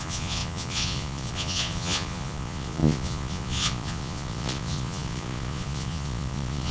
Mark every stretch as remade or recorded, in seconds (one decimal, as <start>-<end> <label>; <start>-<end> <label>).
0.0-6.7 remade